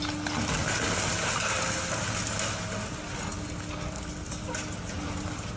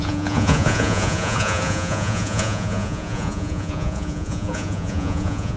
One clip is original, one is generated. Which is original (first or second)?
first